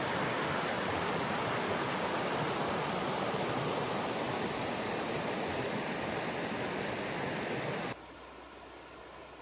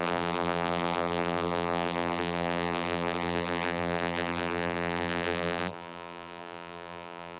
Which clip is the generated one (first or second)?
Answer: second